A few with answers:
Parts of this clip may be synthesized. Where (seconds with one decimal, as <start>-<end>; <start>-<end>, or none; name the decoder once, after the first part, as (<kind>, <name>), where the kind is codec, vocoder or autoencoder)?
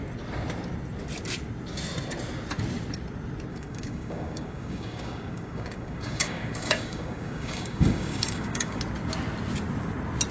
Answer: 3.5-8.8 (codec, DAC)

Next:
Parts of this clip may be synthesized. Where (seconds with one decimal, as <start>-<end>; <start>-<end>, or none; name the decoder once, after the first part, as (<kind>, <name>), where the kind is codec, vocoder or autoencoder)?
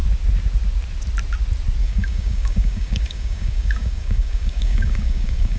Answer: 1.8-5.6 (codec, DAC)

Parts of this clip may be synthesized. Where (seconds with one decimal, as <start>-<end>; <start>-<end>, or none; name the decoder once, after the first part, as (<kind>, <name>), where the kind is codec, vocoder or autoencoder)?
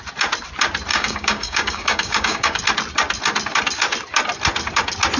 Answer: 0.9-2.6 (codec, DAC)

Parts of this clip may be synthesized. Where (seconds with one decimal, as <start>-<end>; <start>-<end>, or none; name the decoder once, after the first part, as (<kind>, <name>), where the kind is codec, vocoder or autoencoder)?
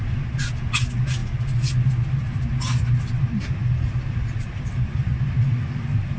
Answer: none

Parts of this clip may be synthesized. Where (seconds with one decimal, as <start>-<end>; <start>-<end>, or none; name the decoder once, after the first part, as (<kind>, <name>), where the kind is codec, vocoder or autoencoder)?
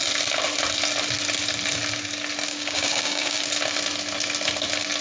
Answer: 2.5-3.5 (codec, DAC)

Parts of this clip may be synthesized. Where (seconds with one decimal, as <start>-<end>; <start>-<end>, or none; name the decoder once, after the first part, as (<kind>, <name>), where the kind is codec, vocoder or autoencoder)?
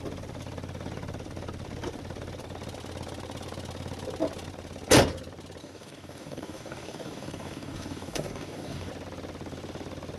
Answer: 5.6-8.9 (codec, DAC)